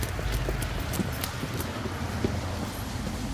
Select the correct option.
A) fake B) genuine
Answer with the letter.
B